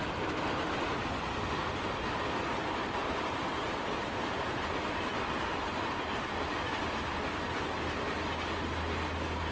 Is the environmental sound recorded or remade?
recorded